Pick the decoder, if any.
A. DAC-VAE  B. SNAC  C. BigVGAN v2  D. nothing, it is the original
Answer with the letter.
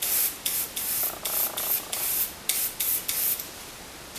D